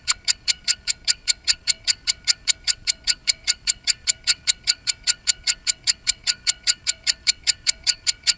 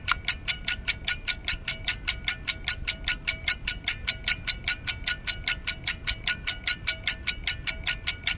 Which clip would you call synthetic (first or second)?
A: first